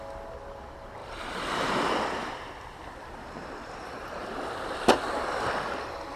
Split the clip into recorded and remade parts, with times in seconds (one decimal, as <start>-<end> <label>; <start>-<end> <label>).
0.0-1.0 recorded; 1.0-1.7 remade; 1.7-6.2 recorded